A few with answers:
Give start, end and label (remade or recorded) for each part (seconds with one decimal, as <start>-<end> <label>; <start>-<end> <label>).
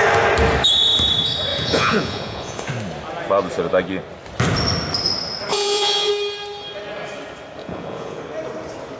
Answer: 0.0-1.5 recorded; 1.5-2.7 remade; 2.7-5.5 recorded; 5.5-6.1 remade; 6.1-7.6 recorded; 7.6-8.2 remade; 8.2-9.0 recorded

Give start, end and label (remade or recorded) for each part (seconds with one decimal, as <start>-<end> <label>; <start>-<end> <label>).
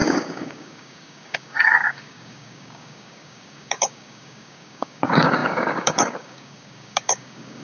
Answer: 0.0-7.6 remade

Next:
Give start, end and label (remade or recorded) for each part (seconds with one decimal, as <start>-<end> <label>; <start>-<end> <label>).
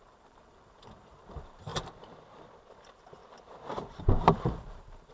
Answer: 0.0-1.7 remade; 1.7-2.7 recorded; 2.7-3.2 remade; 3.2-4.0 recorded; 4.0-5.1 remade